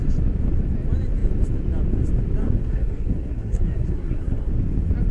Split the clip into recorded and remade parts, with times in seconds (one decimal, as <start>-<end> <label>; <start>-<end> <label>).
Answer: 0.0-2.4 recorded; 2.4-4.5 remade; 4.5-5.1 recorded